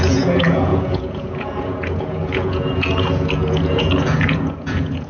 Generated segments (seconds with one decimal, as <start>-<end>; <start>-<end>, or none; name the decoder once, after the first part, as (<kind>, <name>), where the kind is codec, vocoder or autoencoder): 0.0-5.1 (vocoder, Vocos)